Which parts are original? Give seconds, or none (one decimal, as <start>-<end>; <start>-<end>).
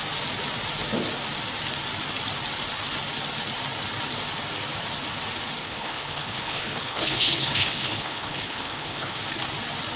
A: 0.0-5.6; 9.2-10.0